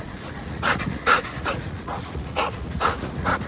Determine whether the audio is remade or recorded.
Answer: remade